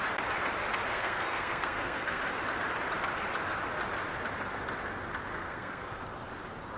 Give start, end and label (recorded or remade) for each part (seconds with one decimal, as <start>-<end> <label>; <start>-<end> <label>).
0.0-0.9 recorded; 0.9-2.2 remade; 2.2-5.3 recorded; 5.3-6.0 remade; 6.0-6.8 recorded